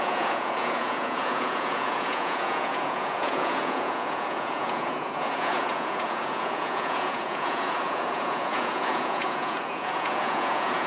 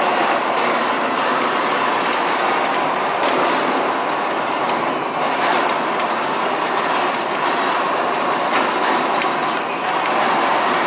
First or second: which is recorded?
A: second